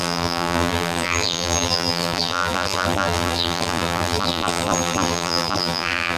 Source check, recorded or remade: remade